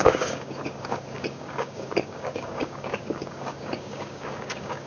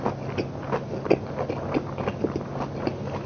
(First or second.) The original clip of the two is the second